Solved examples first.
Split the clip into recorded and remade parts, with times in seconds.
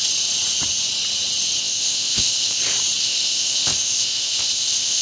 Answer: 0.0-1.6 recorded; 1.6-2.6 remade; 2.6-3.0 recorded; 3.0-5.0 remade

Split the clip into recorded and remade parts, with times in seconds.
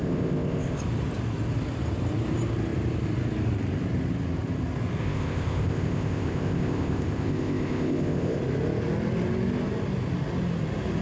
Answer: 0.0-0.8 remade; 0.8-5.0 recorded; 5.0-8.4 remade; 8.4-11.0 recorded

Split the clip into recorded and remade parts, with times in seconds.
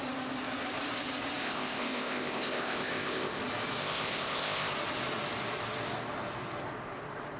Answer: 0.0-1.4 recorded; 1.4-3.4 remade; 3.4-3.8 recorded; 3.8-4.7 remade; 4.7-7.4 recorded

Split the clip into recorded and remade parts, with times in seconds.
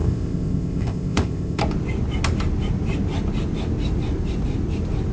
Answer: 0.0-1.6 remade; 1.6-5.1 recorded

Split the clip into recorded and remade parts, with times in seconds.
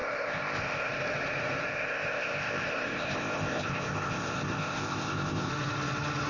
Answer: 0.0-0.9 remade; 0.9-1.7 recorded; 1.7-5.5 remade; 5.5-6.3 recorded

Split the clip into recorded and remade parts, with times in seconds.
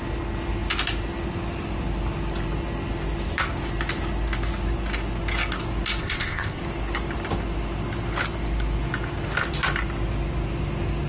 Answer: 0.0-6.0 recorded; 6.0-6.6 remade; 6.6-11.1 recorded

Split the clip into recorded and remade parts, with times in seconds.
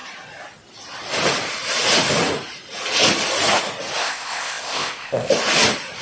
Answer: 0.0-4.0 recorded; 4.0-5.3 remade; 5.3-6.0 recorded